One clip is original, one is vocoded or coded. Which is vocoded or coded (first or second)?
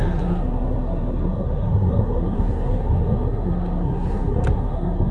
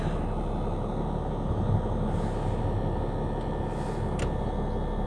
first